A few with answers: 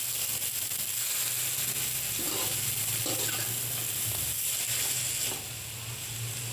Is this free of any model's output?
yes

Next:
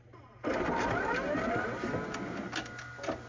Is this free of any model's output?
yes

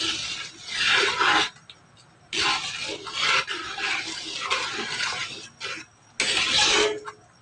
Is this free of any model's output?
yes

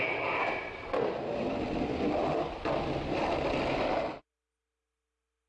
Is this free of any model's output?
yes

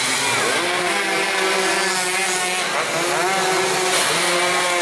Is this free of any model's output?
yes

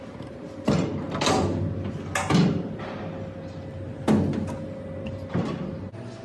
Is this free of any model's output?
yes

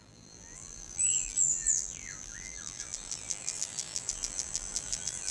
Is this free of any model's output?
no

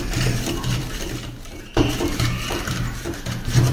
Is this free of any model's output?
no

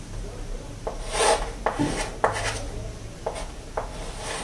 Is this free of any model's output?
yes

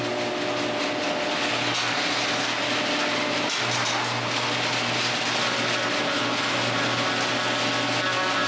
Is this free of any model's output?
yes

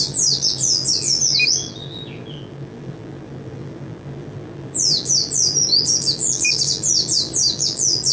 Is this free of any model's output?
no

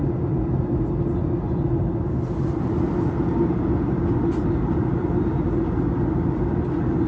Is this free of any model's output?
yes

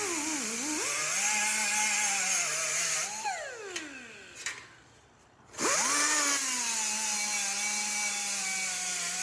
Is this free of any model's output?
yes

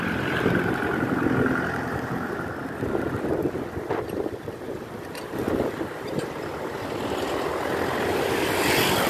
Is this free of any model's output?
yes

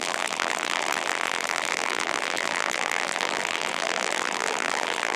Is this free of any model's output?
no